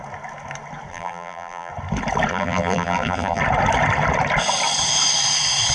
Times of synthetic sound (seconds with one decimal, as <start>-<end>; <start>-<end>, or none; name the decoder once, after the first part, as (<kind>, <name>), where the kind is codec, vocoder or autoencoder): 0.9-1.7 (vocoder, BigVGAN v2); 2.3-3.4

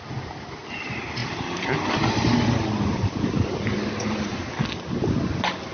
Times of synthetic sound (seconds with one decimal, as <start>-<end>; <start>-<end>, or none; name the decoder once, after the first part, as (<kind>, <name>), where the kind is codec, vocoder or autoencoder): none